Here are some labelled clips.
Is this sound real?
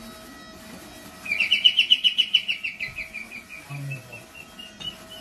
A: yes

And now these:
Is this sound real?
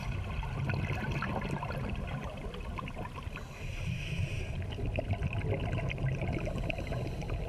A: yes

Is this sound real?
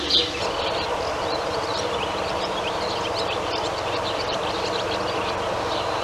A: no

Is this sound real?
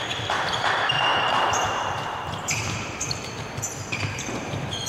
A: no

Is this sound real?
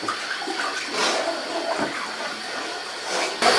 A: yes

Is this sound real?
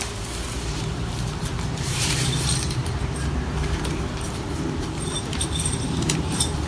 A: no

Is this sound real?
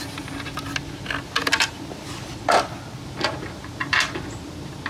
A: yes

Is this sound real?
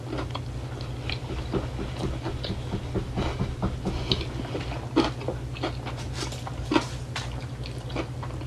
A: yes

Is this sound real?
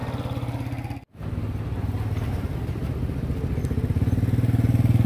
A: yes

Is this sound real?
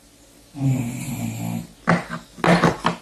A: yes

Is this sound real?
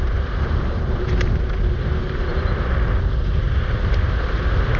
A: no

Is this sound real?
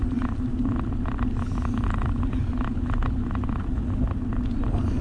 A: yes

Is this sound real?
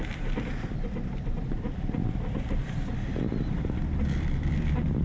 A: no